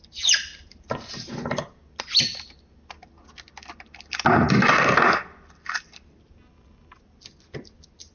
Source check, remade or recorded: recorded